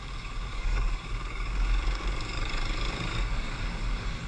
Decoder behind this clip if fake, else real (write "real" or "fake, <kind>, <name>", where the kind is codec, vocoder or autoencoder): fake, codec, DAC